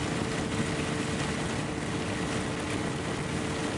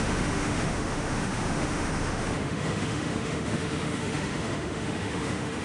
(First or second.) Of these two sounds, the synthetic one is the second